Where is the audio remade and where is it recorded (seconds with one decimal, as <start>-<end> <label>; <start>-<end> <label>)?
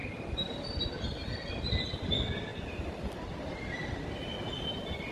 0.0-5.1 recorded